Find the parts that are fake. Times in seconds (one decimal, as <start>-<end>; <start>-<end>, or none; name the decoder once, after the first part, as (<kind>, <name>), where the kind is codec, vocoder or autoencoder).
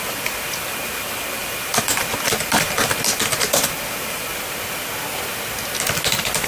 0.0-4.3 (vocoder, BigVGAN v2); 6.1-6.5